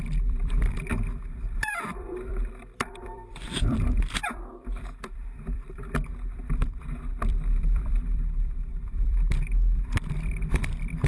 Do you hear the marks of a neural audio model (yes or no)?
yes